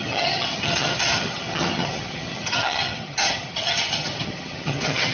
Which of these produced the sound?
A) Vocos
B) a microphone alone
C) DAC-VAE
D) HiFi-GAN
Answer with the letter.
D